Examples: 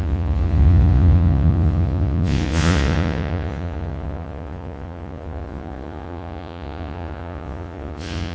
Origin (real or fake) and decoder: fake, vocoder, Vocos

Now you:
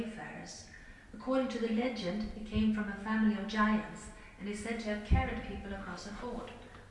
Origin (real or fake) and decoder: real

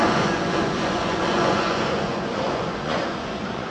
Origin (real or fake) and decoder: fake, vocoder, Vocos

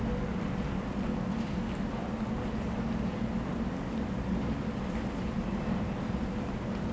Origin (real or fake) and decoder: real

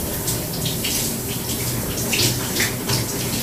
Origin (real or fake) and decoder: real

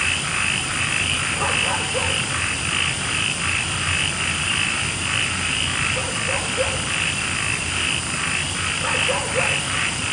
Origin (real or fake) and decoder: real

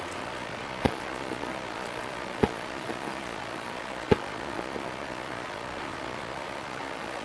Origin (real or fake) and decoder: fake, vocoder, Vocos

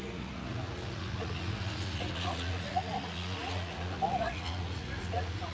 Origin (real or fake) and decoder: fake, vocoder, Vocos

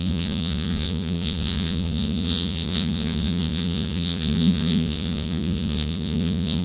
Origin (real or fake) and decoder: fake, vocoder, Vocos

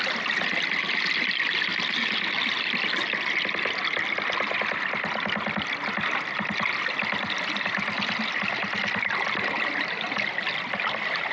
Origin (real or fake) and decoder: real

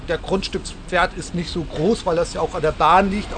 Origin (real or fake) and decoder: real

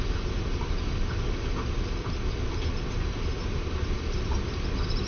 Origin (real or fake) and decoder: real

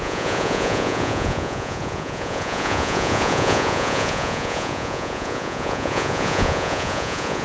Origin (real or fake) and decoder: fake, vocoder, Vocos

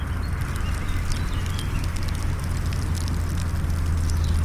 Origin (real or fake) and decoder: real